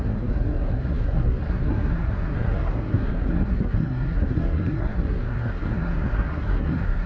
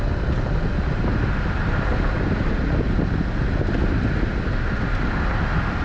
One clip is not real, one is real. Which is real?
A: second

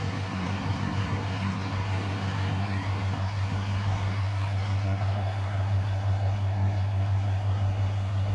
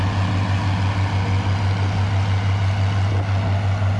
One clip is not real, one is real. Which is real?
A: second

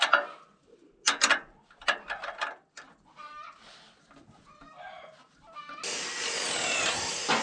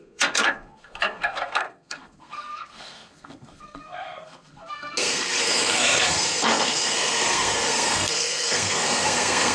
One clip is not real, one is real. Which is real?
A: first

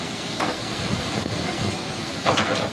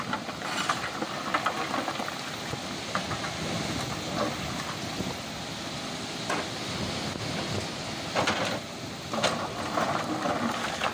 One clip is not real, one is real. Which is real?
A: second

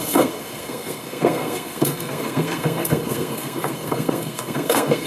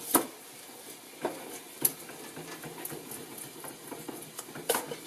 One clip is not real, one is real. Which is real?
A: second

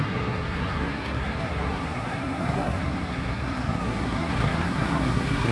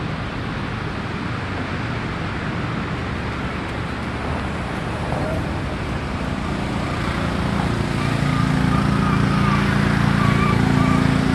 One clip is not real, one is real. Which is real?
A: second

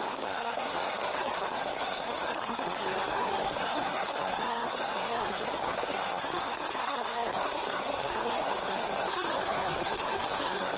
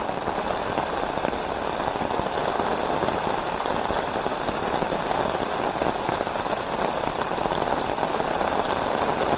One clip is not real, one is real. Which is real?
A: second